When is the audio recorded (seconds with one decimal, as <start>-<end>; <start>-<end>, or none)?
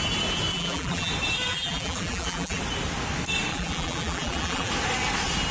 0.0-0.5; 1.1-1.5; 2.6-3.5; 4.7-5.5